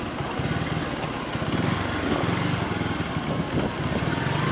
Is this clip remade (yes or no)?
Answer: no